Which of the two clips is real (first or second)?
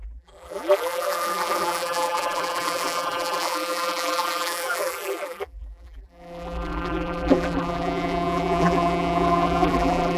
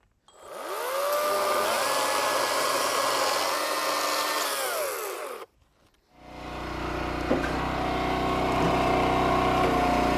second